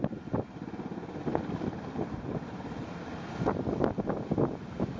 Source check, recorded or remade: recorded